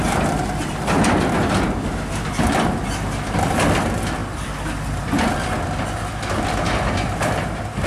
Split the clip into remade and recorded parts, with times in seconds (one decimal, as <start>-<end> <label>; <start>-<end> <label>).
0.0-7.9 recorded